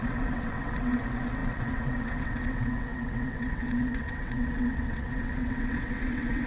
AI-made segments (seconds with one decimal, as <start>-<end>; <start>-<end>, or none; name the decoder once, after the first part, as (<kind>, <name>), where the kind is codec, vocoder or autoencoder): 0.0-6.5 (vocoder, WaveNeXt)